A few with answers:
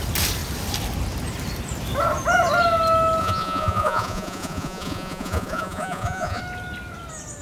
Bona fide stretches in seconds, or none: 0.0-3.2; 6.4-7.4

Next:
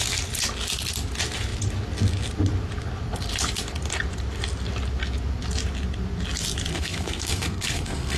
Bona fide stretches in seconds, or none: 0.0-6.7

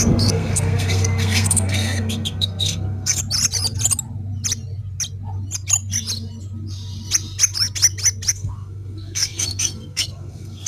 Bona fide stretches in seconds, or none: 3.2-8.3